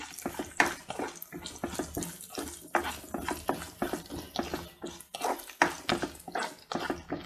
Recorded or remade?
recorded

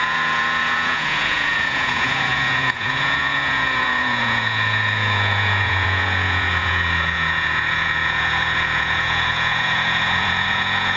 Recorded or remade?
remade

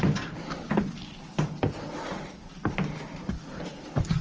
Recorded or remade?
recorded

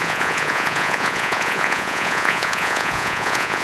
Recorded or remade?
remade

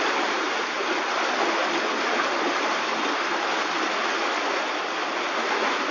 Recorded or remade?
recorded